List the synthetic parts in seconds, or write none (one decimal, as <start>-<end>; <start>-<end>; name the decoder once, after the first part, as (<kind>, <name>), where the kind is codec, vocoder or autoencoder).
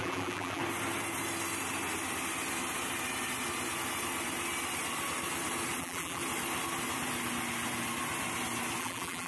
0.0-0.6 (vocoder, BigVGAN v2); 5.8-6.2; 8.8-9.3